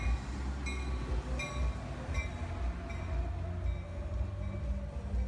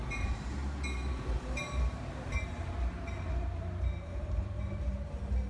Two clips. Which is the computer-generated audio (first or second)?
second